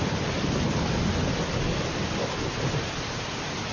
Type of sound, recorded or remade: recorded